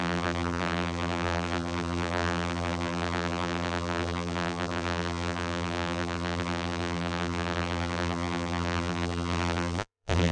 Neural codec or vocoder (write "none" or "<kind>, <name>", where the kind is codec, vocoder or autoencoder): vocoder, BigVGAN v2